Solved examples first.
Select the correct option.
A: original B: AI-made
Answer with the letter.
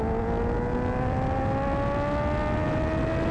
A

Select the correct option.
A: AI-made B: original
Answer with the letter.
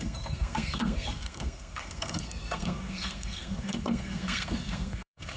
A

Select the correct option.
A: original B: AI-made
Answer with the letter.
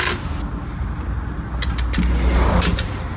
A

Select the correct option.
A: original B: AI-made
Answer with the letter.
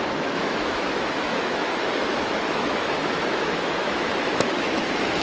B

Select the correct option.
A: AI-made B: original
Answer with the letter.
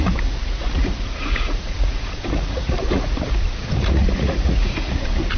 A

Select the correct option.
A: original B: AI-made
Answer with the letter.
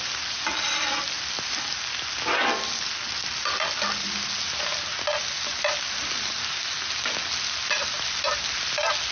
A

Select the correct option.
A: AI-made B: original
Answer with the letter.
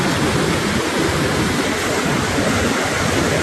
B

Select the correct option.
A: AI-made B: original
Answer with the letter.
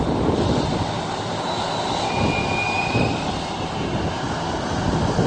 B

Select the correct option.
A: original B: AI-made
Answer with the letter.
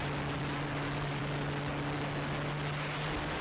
A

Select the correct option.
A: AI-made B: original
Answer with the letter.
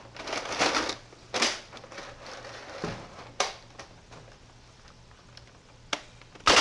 B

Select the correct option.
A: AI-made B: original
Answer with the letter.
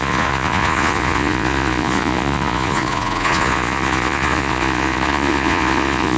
A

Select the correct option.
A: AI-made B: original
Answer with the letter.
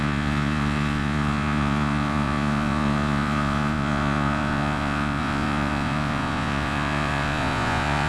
A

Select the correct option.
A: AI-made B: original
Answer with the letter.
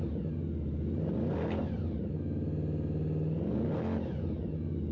B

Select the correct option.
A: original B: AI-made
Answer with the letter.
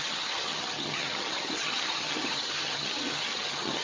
B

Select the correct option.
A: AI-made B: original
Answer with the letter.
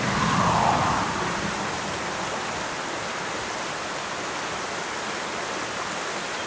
B